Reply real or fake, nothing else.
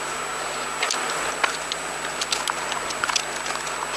real